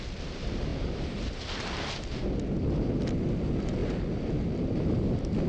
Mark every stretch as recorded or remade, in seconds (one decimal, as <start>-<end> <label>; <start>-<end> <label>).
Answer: 0.0-5.5 recorded